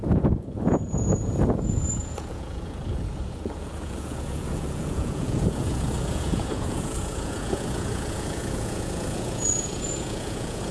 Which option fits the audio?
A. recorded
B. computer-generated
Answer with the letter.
B